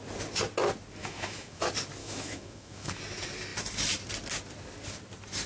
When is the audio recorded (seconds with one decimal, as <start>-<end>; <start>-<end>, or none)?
0.0-1.0; 1.6-2.0; 3.0-5.5